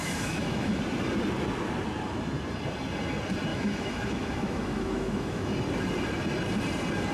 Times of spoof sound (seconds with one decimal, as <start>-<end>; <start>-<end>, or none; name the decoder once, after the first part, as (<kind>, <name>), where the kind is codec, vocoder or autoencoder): 0.0-0.8 (autoencoder, DAC-VAE); 3.5-5.5

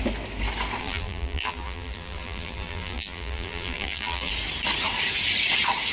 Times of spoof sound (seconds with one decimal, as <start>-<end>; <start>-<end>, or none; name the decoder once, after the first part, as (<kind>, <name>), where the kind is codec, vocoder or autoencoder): 0.8-4.3 (vocoder, BigVGAN v2)

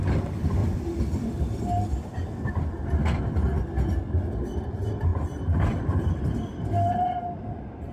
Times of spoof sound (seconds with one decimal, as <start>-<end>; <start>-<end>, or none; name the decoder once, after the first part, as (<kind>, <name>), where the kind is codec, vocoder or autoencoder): 0.6-1.3 (vocoder, BigVGAN v2); 5.1-6.2

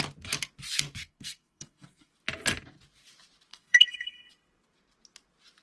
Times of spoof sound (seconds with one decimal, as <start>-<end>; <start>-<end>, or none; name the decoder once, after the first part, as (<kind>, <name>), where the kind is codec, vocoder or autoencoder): 1.0-2.1 (codec, SNAC); 3.5-4.3

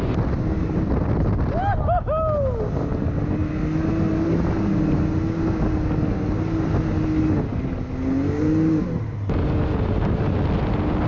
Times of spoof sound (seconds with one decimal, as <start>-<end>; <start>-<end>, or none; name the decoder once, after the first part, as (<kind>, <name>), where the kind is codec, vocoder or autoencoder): none

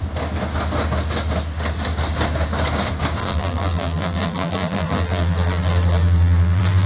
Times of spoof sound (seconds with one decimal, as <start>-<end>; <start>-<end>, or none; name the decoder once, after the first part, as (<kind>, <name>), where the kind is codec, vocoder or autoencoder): 3.2-6.9 (vocoder, BigVGAN v2)

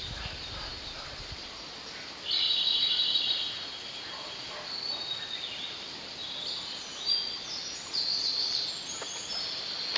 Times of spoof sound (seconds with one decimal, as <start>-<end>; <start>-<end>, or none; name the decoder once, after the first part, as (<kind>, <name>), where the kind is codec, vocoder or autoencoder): none